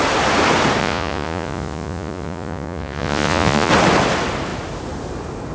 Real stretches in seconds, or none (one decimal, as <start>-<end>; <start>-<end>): 0.0-0.8; 3.7-5.5